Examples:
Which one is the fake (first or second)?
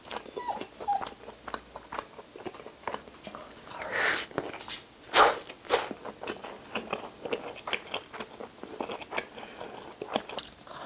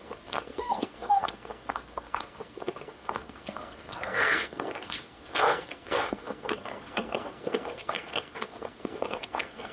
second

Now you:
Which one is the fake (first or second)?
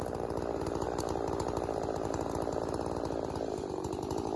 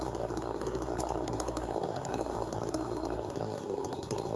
second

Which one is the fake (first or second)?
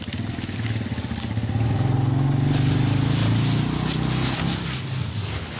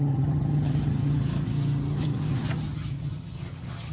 second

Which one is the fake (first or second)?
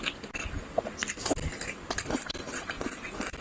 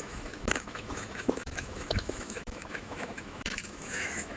second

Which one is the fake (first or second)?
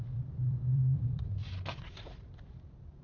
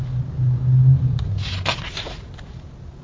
first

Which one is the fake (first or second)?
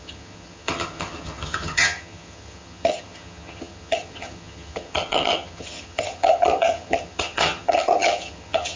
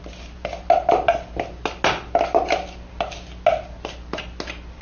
first